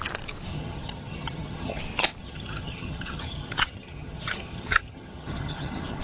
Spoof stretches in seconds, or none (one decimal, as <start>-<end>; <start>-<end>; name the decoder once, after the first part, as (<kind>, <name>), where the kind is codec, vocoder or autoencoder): 0.5-1.8 (vocoder, HiFi-GAN); 2.2-6.0